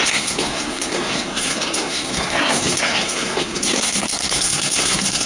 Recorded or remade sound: remade